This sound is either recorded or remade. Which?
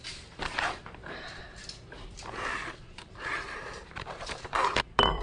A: remade